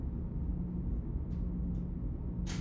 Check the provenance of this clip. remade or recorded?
recorded